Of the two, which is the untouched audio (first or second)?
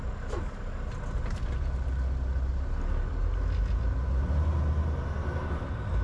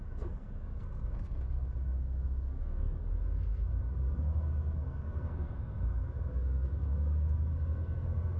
first